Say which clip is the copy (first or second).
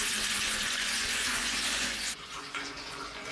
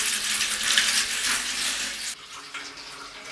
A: first